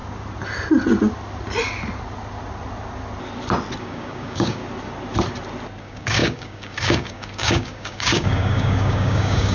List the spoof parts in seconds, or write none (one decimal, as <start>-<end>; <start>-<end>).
3.8-4.6; 5.8-9.5